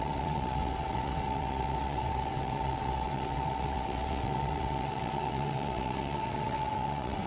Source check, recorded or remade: remade